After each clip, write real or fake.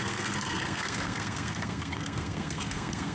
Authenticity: fake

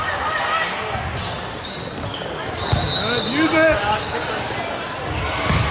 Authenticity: real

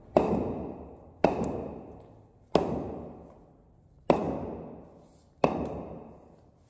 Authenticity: real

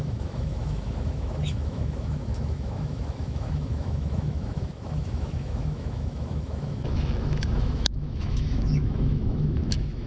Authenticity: fake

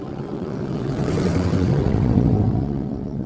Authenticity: fake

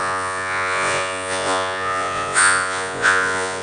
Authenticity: fake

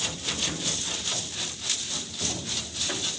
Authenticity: real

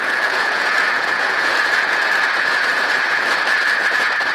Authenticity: fake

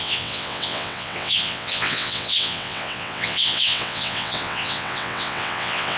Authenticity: fake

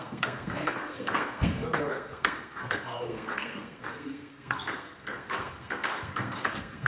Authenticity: fake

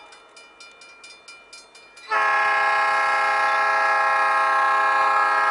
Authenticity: real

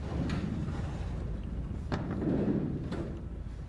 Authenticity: real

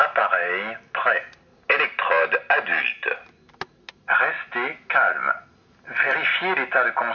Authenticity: real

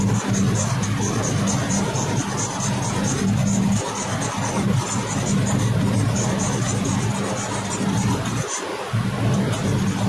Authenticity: real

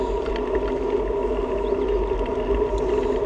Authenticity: real